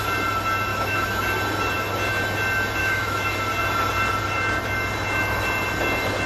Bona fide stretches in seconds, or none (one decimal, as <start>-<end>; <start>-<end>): 0.0-0.7; 1.2-2.8; 3.3-6.3